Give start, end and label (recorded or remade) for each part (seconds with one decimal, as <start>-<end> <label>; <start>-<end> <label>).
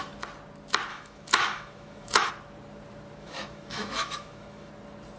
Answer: 0.0-0.9 recorded; 0.9-2.3 remade; 2.3-3.2 recorded; 3.2-4.7 remade; 4.7-5.2 recorded